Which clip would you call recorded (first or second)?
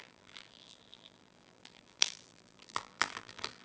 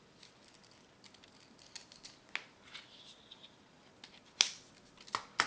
second